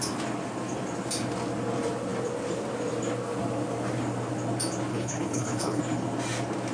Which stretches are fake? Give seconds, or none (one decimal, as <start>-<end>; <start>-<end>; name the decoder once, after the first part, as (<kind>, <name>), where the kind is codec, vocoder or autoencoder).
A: 4.9-5.8 (codec, HILCodec)